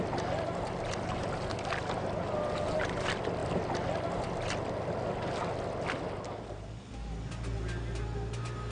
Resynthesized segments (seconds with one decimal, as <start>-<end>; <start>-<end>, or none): none